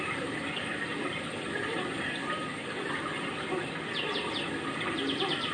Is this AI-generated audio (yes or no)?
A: no